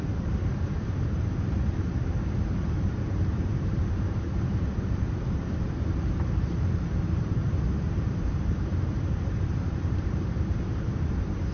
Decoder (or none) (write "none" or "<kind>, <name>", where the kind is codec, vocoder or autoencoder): vocoder, BigVGAN v2